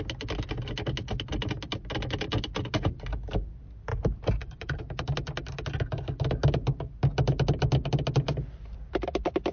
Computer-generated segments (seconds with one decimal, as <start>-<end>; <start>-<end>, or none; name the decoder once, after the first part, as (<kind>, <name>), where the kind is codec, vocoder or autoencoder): 3.9-4.8 (vocoder, BigVGAN v2)